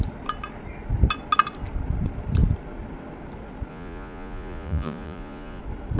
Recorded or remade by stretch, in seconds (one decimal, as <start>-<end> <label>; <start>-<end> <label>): 0.0-3.7 recorded; 3.7-5.6 remade; 5.6-6.0 recorded